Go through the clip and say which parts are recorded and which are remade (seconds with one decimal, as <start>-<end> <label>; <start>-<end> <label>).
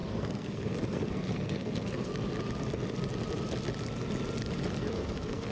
0.0-2.1 remade; 2.1-4.7 recorded; 4.7-5.5 remade